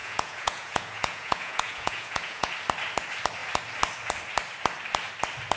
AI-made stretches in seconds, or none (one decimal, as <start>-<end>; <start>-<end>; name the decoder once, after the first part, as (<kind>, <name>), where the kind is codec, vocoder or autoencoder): 0.0-2.5 (vocoder, Vocos)